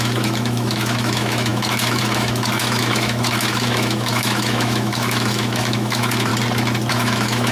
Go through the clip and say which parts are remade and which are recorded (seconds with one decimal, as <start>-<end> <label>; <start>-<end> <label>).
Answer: 0.0-6.3 remade; 6.3-6.9 recorded; 6.9-7.5 remade